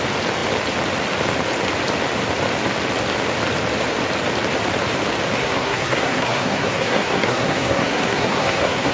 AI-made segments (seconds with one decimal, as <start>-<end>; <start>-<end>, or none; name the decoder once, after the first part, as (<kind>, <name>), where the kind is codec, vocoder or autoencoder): 5.4-8.9 (codec, SNAC)